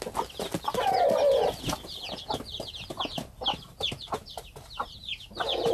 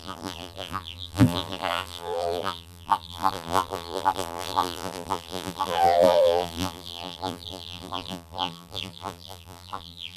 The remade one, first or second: second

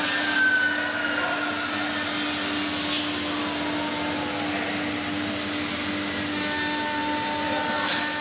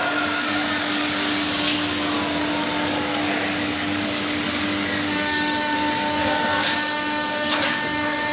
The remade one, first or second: second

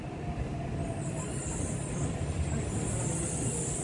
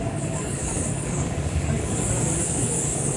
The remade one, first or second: second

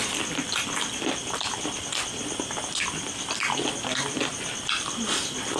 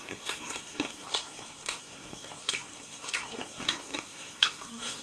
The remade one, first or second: second